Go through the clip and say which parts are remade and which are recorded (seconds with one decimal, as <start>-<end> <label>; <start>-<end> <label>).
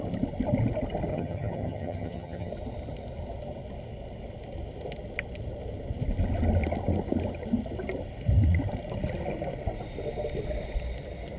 0.0-1.1 recorded; 1.1-2.5 remade; 2.5-11.4 recorded